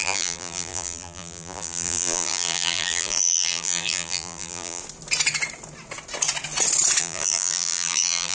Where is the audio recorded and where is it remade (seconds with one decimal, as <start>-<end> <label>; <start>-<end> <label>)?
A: 0.0-4.8 remade; 4.8-7.0 recorded; 7.0-8.3 remade